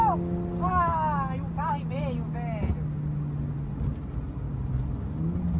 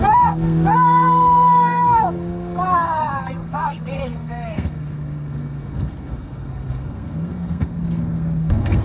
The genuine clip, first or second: first